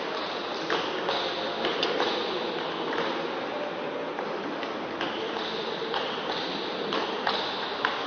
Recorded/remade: recorded